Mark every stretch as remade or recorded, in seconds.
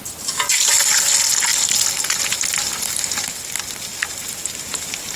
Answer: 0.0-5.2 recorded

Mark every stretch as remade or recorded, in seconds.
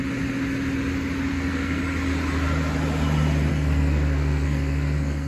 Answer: 0.0-1.3 recorded; 1.3-1.8 remade; 1.8-3.5 recorded; 3.5-5.3 remade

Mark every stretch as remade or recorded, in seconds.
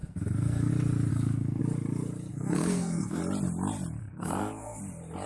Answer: 0.0-0.7 remade; 0.7-1.1 recorded; 1.1-1.6 remade; 1.6-2.3 recorded; 2.3-3.2 remade; 3.2-4.0 recorded; 4.0-4.8 remade; 4.8-5.3 recorded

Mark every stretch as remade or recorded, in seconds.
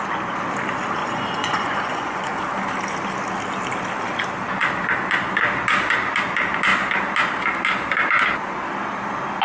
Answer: 0.0-1.0 recorded; 1.0-2.4 remade; 2.4-9.4 recorded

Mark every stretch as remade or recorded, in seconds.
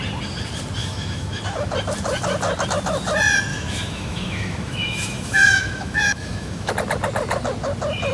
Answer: 0.0-0.8 recorded; 0.8-1.4 remade; 1.4-3.5 recorded; 3.5-6.7 remade; 6.7-8.1 recorded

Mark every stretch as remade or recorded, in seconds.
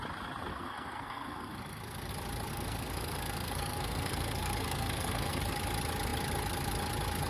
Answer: 0.0-0.5 recorded; 0.5-2.1 remade; 2.1-2.5 recorded; 2.5-5.4 remade; 5.4-7.3 recorded